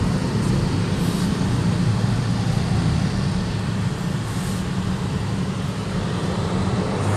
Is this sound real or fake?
real